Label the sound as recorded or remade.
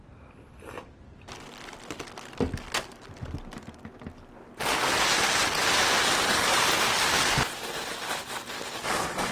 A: recorded